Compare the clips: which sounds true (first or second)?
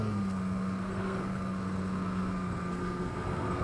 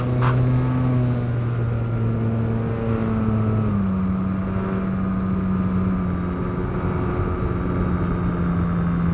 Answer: second